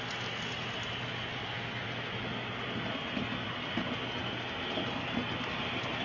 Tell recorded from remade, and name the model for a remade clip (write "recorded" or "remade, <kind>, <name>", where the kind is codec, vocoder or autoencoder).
recorded